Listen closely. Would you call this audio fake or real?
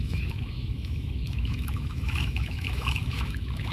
fake